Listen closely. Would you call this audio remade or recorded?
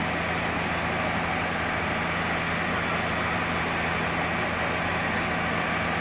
recorded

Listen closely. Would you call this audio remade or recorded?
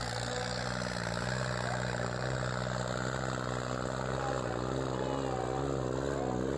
recorded